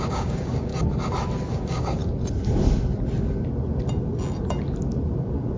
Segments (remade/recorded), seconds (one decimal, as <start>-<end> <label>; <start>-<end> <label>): 0.0-0.7 remade; 0.7-1.5 recorded; 1.5-2.0 remade; 2.0-5.6 recorded